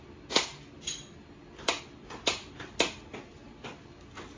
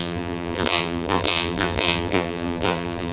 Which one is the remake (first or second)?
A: second